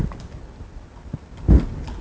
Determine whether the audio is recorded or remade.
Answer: recorded